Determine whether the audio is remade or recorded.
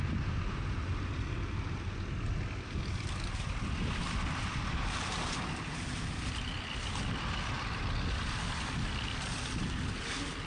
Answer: recorded